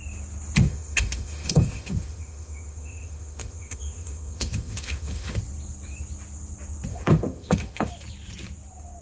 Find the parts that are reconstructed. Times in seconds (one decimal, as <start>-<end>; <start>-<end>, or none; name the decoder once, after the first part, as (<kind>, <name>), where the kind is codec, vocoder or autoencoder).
0.6-5.4 (autoencoder, DAC-VAE); 6.9-7.9